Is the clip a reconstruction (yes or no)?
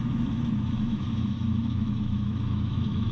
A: yes